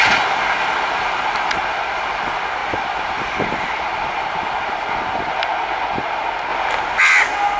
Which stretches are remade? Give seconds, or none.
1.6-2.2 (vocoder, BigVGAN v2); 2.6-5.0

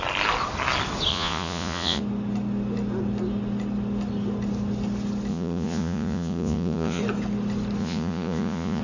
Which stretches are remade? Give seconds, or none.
1.1-2.0 (vocoder, Vocos); 5.3-7.0; 7.8-8.8

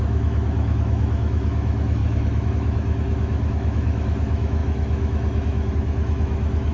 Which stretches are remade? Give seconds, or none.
0.0-6.7 (autoencoder, DAC-VAE)

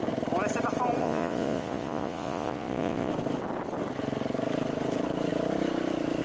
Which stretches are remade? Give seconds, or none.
1.0-3.1 (vocoder, Vocos)

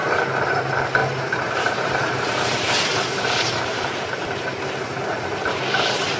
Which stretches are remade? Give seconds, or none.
0.0-0.6 (vocoder, BigVGAN v2); 1.0-4.4

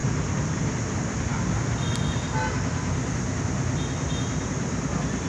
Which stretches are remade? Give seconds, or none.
none